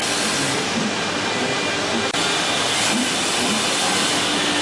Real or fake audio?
real